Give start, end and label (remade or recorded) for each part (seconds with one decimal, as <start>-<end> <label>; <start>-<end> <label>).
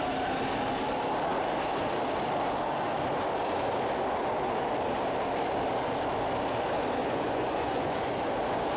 0.0-7.0 recorded; 7.0-8.1 remade; 8.1-8.8 recorded